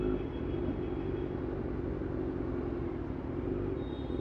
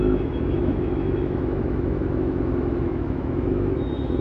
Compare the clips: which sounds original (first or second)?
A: first